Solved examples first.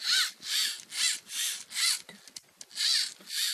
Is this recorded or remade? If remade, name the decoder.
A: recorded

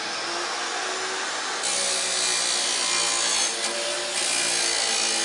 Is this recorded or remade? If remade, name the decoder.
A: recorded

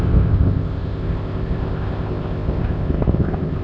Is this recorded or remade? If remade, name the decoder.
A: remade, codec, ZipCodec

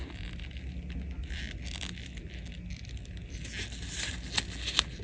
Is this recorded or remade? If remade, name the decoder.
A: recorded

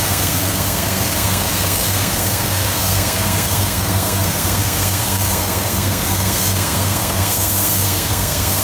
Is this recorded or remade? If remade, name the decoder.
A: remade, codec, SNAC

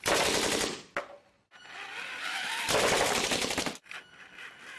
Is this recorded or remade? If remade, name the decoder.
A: recorded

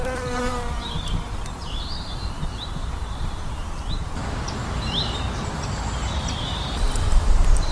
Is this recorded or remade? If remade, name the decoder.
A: remade, vocoder, BigVGAN v2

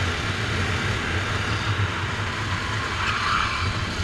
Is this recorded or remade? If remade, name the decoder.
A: recorded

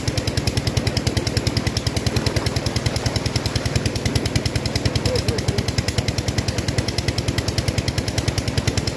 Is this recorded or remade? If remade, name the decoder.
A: recorded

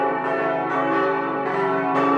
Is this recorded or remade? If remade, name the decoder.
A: remade, vocoder, BigVGAN v2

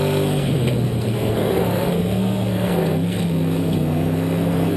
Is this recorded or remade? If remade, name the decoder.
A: remade, codec, SNAC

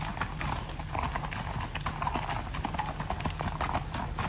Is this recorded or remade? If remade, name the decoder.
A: recorded